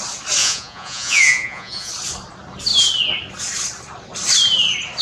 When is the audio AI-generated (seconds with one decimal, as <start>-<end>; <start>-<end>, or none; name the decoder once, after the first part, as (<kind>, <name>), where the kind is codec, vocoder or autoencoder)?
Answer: 0.4-1.9 (vocoder, Vocos)